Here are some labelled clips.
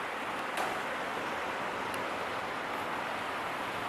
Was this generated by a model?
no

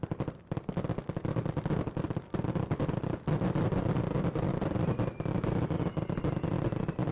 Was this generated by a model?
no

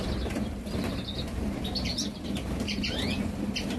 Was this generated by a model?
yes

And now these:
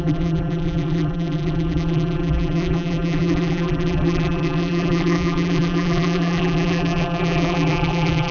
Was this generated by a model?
yes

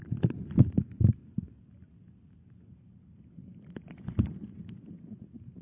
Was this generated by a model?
no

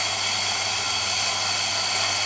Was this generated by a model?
no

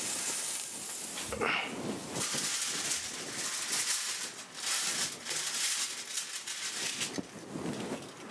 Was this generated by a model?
no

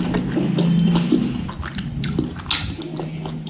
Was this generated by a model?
no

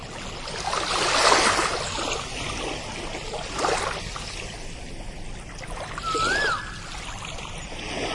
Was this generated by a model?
no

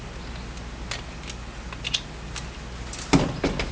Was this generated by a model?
no